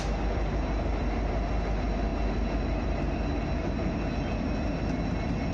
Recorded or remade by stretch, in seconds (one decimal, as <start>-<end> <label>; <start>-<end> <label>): 0.0-5.5 recorded